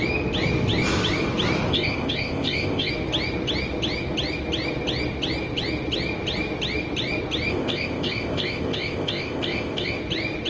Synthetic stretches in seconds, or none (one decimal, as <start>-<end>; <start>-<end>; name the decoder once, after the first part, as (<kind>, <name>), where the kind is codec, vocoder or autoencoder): 1.7-2.9 (codec, ZipCodec); 7.5-10.0